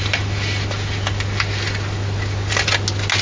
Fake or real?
real